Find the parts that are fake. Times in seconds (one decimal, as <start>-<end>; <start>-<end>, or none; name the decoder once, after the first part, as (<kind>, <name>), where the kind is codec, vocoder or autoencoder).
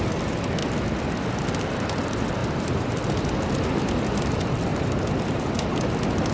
2.4-3.0 (vocoder, BigVGAN v2); 4.7-5.5